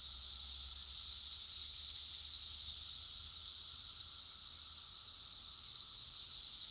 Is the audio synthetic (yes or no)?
no